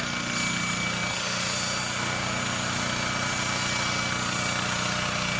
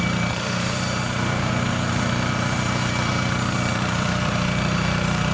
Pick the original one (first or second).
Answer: first